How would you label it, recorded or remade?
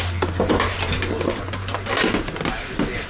recorded